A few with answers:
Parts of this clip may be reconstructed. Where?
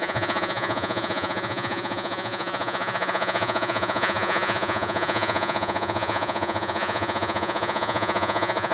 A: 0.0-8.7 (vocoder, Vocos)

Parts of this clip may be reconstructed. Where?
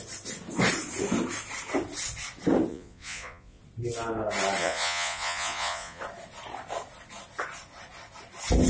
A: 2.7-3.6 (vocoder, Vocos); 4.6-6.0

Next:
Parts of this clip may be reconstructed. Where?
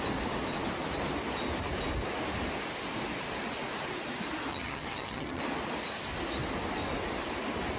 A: 4.5-5.4 (vocoder, HiFi-GAN)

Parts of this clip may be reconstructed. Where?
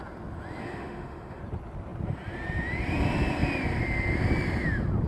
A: 0.6-1.4 (autoencoder, DAC-VAE)